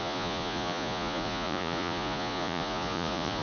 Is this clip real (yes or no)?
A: no